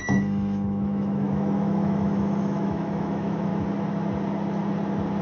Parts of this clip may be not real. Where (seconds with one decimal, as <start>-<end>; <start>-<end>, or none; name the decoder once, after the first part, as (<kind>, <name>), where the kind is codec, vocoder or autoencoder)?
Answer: 0.0-3.5 (autoencoder, DAC-VAE)